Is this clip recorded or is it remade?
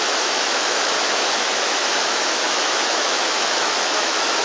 remade